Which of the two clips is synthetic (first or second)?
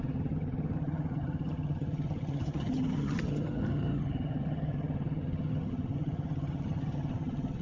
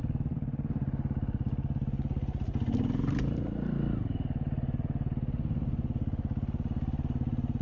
first